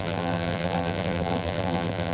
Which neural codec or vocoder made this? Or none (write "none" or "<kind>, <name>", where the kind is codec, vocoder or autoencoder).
vocoder, BigVGAN v2